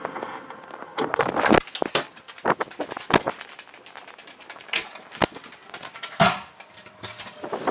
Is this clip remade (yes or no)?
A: no